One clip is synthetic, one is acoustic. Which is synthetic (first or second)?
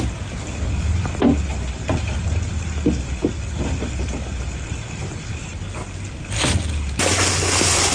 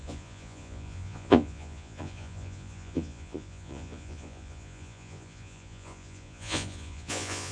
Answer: second